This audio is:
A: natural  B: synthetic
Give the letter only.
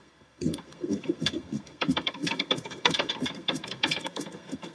B